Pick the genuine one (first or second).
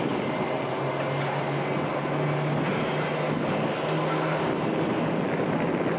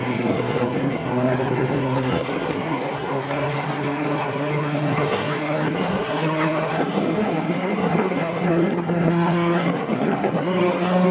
first